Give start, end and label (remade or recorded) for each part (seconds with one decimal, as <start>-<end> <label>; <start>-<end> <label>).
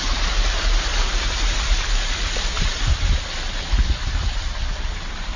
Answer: 0.0-0.9 recorded; 0.9-4.1 remade; 4.1-5.4 recorded